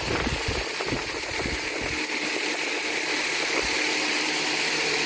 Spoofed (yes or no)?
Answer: no